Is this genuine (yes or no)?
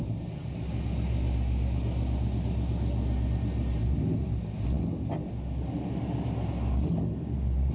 yes